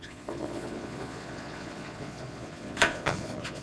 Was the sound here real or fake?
fake